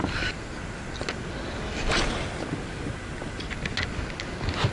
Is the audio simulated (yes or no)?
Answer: no